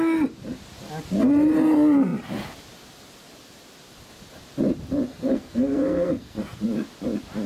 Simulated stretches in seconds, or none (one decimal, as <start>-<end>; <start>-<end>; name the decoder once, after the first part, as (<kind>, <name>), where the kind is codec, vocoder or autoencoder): 5.1-6.6 (codec, SNAC)